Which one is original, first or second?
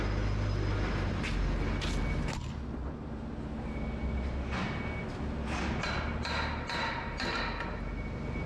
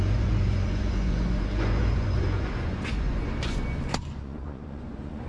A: first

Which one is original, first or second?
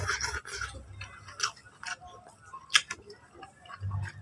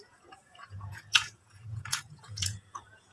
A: first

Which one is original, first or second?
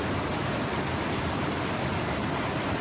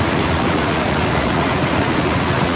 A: first